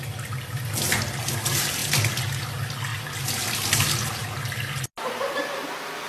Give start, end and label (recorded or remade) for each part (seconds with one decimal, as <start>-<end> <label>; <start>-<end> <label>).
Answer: 0.0-6.1 recorded